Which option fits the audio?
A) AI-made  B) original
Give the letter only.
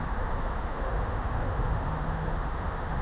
A